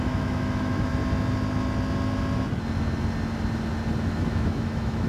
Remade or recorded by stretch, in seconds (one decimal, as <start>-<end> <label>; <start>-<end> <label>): 0.0-0.9 remade; 0.9-4.0 recorded; 4.0-5.1 remade